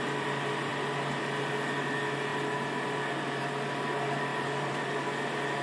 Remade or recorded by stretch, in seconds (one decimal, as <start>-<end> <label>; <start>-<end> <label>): 0.0-5.6 recorded